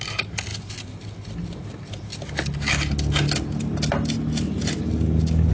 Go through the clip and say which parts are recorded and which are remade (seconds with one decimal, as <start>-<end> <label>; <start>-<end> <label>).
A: 0.0-5.5 recorded